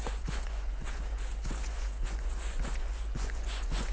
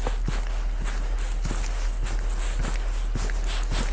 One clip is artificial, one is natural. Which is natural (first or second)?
second